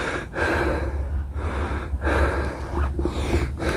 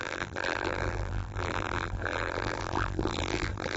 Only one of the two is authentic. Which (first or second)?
first